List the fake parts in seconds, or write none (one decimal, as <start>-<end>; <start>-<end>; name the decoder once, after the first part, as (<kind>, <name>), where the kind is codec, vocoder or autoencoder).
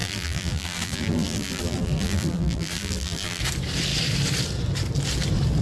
0.0-3.4 (vocoder, BigVGAN v2)